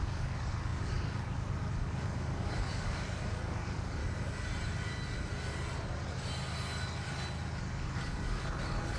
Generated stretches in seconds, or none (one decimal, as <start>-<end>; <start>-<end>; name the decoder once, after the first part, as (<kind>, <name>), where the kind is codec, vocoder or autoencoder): 0.0-4.0 (codec, DAC); 7.6-9.0